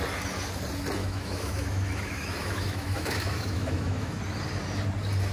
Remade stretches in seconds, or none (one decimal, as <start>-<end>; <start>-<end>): 1.0-4.2